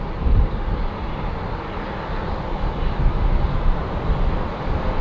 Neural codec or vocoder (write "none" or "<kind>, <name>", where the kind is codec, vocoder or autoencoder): none